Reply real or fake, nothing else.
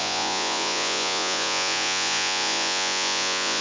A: fake